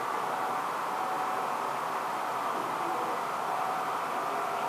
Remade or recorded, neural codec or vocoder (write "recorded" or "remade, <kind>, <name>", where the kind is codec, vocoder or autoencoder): recorded